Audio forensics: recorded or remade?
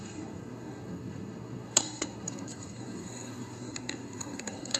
remade